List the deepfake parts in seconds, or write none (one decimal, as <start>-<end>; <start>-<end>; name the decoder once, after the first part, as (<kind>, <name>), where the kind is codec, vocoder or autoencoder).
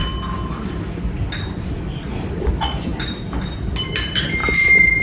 none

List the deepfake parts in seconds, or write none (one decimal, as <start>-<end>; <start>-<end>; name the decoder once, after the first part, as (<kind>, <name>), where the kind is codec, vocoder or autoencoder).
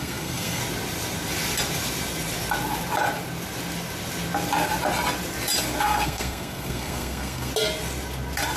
0.0-0.6 (codec, SNAC); 5.8-7.5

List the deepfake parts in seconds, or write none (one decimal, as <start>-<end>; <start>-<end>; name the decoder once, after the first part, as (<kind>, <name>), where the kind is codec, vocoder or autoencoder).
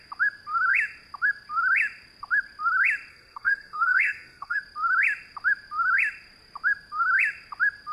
3.1-4.6 (codec, SNAC)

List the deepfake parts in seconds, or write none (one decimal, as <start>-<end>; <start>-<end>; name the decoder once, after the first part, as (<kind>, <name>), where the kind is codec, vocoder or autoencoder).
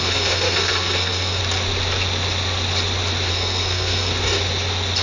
0.0-1.4 (codec, SNAC); 3.3-4.1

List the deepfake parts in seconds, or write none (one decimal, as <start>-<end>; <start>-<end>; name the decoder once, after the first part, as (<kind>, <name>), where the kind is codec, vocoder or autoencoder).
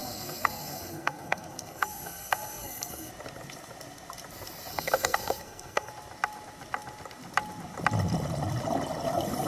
0.0-3.1 (codec, SNAC); 4.7-5.9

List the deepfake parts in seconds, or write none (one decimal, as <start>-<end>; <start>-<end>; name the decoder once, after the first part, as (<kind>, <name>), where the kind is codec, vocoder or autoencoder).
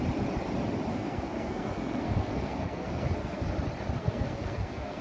0.9-3.5 (codec, SNAC); 4.0-5.0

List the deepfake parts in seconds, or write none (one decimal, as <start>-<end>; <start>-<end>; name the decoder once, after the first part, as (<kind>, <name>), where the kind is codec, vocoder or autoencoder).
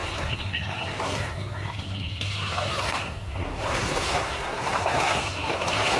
0.0-6.0 (codec, SNAC)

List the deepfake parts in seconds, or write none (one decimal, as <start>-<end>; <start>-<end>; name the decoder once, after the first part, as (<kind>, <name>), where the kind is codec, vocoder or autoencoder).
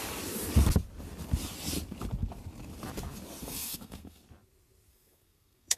3.4-4.2 (codec, SNAC); 4.9-5.8